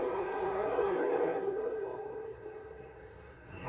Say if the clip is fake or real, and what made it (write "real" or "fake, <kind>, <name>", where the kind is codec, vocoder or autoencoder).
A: fake, codec, SNAC